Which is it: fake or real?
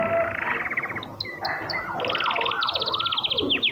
real